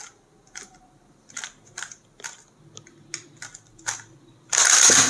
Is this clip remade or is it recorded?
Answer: recorded